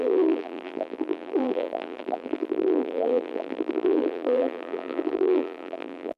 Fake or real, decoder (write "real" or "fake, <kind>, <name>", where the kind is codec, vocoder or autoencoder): fake, vocoder, BigVGAN v2